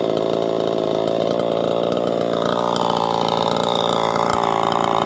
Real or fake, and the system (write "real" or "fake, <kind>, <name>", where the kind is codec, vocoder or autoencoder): real